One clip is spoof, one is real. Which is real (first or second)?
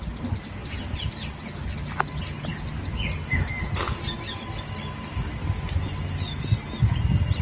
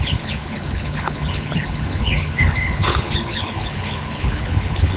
first